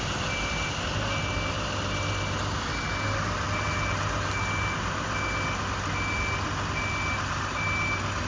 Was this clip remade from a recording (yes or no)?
no